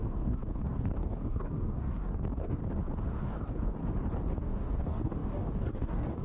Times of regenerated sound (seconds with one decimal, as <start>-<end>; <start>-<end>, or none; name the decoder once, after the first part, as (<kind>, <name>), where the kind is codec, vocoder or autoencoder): 0.0-2.6 (codec, DAC); 3.2-3.8; 4.4-6.2